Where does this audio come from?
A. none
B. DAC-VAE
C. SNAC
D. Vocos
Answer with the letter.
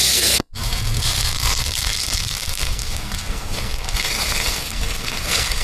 C